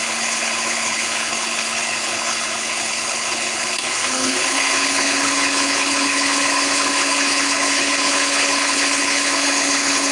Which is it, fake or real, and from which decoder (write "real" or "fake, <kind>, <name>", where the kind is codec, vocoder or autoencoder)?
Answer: fake, codec, HILCodec